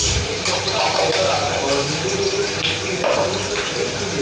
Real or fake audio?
real